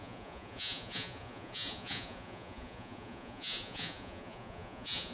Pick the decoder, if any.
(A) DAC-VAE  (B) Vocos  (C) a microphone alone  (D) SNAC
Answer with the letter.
B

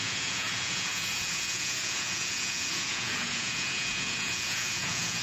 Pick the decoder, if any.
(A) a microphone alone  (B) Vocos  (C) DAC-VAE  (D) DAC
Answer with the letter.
B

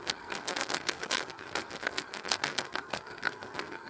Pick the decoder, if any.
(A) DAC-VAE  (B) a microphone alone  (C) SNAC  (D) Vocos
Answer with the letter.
C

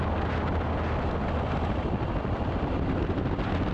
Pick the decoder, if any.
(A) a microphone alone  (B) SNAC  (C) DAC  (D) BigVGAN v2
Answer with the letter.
A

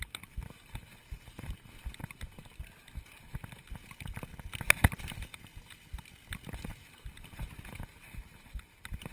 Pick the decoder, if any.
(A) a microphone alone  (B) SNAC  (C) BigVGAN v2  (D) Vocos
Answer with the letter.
A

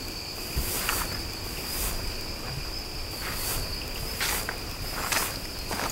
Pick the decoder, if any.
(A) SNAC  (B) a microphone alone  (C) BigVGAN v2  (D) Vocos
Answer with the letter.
B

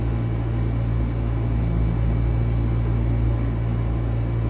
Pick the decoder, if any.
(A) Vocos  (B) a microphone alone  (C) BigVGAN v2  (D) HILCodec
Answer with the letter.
B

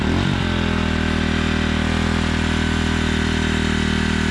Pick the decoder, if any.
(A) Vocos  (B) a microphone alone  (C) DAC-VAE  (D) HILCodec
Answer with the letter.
B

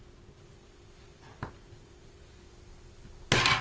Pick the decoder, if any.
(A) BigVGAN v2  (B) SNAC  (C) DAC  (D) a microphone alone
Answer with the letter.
D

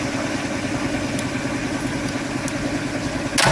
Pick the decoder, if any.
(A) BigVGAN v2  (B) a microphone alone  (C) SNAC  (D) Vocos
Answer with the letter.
B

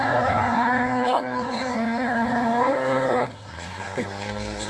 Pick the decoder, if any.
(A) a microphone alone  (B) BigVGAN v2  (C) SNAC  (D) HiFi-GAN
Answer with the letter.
C